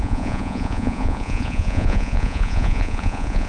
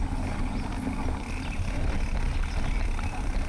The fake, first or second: first